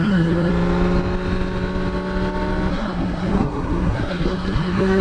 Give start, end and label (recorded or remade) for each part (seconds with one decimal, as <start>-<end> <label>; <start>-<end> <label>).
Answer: 0.0-0.5 remade; 0.5-2.7 recorded; 2.7-5.0 remade

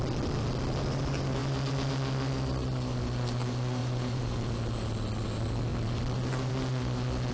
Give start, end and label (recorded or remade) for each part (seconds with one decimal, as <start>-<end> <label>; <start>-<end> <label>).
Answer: 0.0-3.8 recorded; 3.8-4.4 remade; 4.4-7.3 recorded

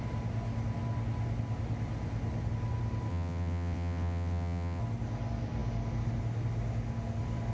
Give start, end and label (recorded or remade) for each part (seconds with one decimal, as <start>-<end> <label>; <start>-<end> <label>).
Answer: 0.0-3.1 recorded; 3.1-4.8 remade; 4.8-7.5 recorded